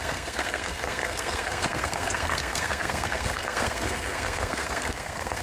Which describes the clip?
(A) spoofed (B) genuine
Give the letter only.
A